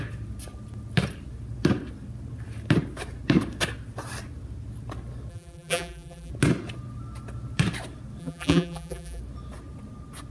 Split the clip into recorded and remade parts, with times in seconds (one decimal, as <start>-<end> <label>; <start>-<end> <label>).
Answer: 0.0-5.3 recorded; 5.3-6.3 remade; 6.3-8.2 recorded; 8.2-9.2 remade; 9.2-10.3 recorded